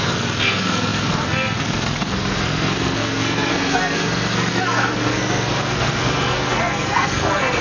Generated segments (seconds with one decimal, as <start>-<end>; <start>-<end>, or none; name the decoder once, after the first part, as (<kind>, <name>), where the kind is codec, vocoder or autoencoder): 0.0-7.6 (codec, SNAC)